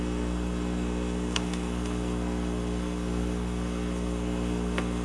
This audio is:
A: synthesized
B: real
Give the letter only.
A